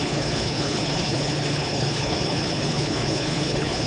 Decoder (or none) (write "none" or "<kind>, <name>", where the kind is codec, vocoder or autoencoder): codec, HILCodec